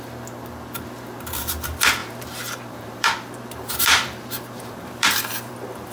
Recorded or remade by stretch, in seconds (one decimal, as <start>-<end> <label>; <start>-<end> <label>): 0.0-2.0 recorded; 2.0-5.5 remade; 5.5-5.9 recorded